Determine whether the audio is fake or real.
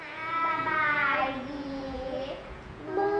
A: fake